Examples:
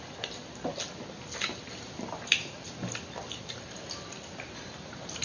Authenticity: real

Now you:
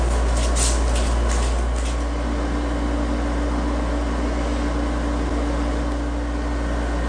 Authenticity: real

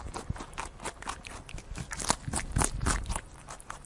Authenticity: real